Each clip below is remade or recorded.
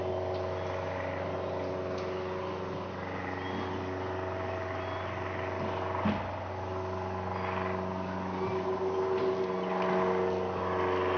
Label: recorded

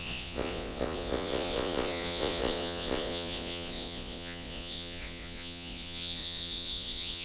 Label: remade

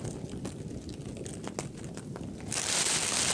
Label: recorded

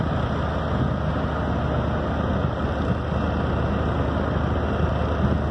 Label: recorded